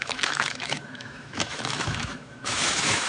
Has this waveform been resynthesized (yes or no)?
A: yes